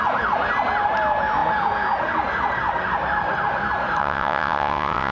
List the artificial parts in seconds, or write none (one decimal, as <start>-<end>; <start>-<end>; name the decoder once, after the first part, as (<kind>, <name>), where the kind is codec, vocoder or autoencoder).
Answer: 4.0-5.1 (vocoder, WaveNeXt)